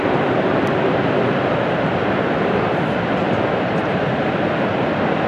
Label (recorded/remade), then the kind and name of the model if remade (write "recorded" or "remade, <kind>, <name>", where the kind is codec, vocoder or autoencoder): remade, vocoder, BigVGAN v2